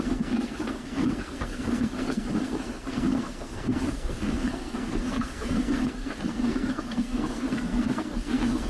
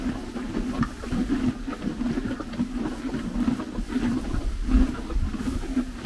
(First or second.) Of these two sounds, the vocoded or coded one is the first